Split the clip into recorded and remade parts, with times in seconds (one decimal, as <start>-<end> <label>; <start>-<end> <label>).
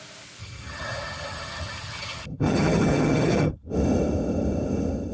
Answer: 0.0-0.4 recorded; 0.4-3.5 remade; 3.5-5.1 recorded